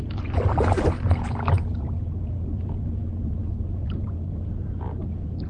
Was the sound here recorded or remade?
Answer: recorded